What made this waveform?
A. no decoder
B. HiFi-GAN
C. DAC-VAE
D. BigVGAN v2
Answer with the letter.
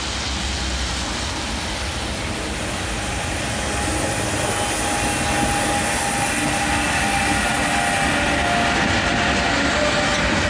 A